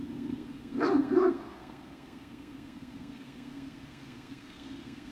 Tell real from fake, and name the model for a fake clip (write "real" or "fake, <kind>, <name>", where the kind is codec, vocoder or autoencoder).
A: fake, codec, SNAC